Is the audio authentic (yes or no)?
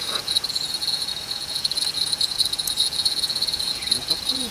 no